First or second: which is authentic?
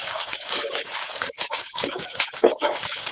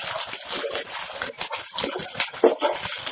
second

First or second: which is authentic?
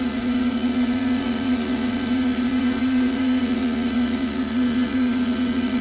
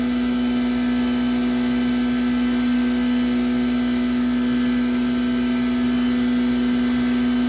second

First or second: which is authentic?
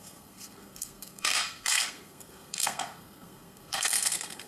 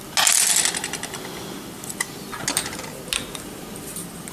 second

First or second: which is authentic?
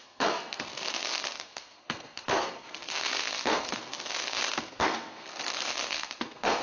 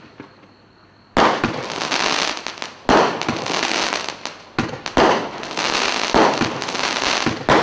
second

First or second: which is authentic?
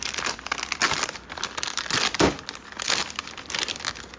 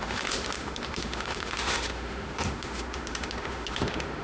first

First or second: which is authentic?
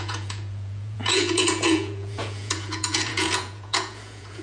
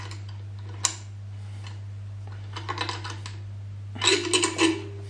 second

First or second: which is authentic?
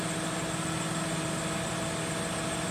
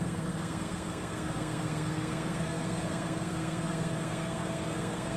first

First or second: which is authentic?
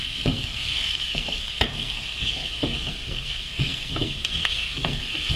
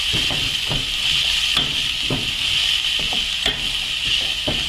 second